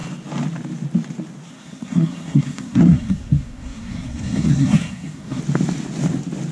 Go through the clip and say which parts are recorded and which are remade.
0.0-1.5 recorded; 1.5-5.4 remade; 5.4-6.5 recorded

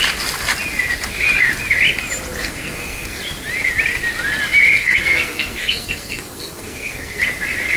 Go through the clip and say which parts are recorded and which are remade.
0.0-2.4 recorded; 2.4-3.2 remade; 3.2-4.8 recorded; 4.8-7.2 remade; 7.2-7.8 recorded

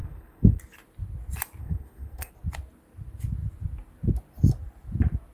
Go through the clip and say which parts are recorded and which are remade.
0.0-0.6 remade; 0.6-1.6 recorded; 1.6-2.3 remade; 2.3-5.3 recorded